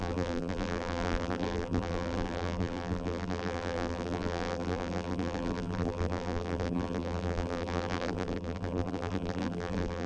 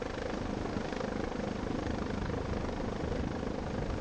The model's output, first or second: first